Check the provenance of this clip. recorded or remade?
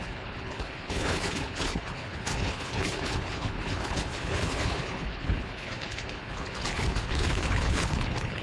remade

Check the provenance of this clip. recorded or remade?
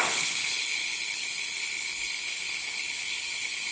remade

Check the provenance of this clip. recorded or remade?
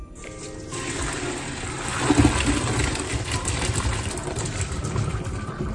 recorded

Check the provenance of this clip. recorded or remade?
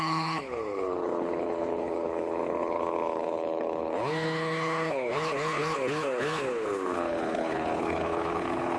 remade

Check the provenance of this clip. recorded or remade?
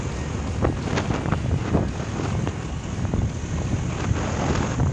recorded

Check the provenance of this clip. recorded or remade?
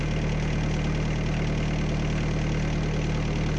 recorded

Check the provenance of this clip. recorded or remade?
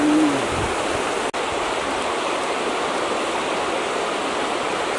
recorded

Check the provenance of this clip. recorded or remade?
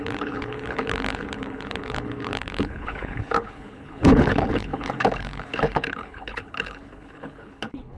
remade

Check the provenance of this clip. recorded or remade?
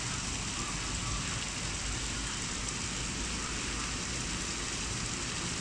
recorded